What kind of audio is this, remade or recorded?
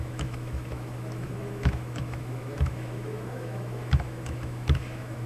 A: remade